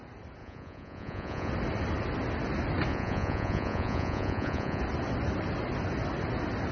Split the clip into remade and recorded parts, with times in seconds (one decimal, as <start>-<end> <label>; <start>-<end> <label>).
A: 0.0-0.4 recorded; 0.4-1.5 remade; 1.5-2.9 recorded; 2.9-4.8 remade; 4.8-6.7 recorded